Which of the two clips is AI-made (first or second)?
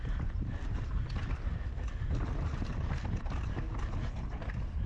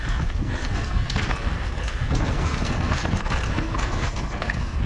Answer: second